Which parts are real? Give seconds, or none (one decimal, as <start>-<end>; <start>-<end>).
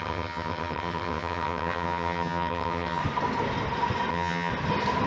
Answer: 3.0-4.1; 4.5-5.1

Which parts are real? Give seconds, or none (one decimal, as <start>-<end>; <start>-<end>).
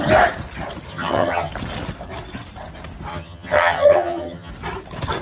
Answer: 0.0-0.9; 1.5-3.1; 4.5-5.2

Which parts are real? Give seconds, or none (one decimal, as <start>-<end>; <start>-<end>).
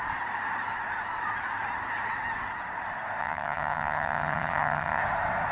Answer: 0.0-3.2; 5.0-5.5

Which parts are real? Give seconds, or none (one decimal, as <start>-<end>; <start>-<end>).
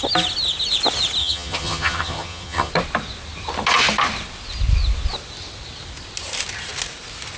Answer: 0.0-1.2; 2.7-7.4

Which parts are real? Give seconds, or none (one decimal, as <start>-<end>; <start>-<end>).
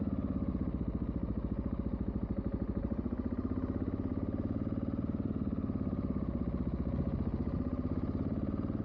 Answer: 0.0-8.8